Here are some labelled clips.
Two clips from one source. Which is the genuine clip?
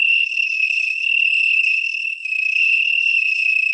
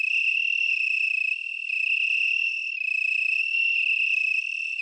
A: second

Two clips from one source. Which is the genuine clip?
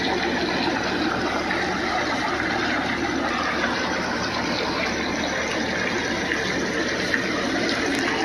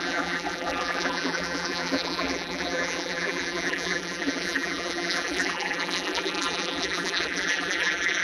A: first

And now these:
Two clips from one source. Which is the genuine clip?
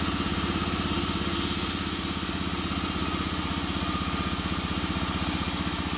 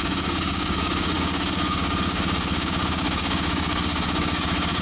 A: first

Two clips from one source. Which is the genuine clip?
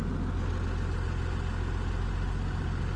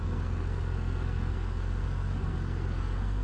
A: first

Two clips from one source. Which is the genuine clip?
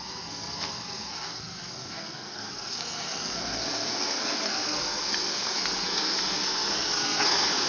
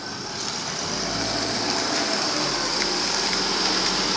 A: second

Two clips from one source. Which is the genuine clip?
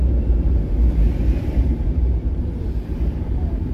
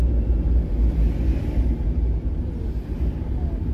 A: second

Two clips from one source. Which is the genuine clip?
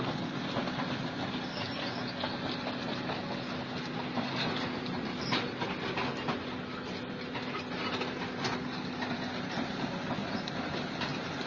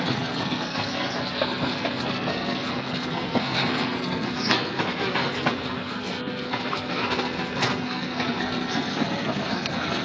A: first